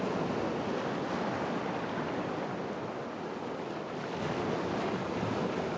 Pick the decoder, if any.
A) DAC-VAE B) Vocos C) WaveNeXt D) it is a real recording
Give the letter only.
D